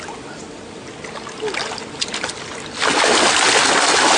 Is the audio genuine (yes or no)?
yes